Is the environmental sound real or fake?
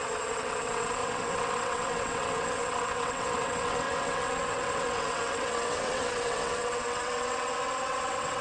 fake